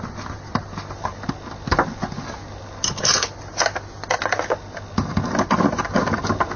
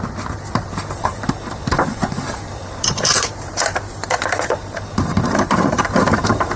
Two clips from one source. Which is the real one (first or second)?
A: first